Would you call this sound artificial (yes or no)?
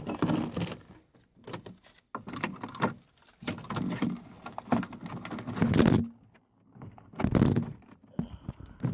no